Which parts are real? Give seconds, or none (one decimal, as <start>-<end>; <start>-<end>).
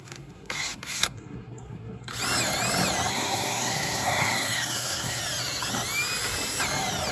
2.1-3.1; 5.2-7.1